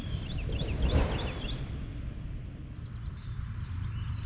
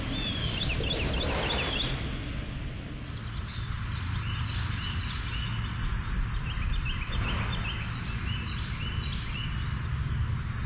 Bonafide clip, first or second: second